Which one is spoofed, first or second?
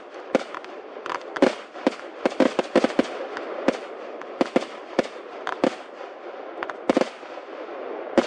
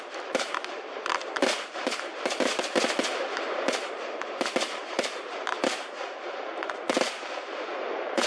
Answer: second